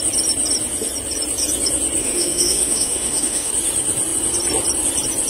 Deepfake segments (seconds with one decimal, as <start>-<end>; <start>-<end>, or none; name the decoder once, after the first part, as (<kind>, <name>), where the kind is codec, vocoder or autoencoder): 2.0-3.5 (autoencoder, DAC-VAE)